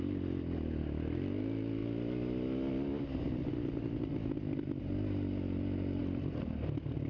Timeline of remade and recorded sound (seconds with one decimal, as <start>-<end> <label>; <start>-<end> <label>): 0.0-7.1 recorded